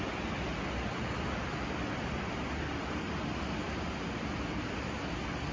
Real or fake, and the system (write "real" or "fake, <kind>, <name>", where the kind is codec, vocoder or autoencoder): real